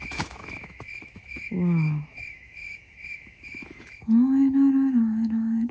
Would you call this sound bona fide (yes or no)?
no